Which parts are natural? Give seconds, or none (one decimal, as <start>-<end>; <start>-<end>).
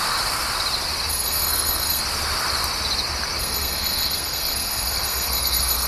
0.0-1.1; 2.0-3.4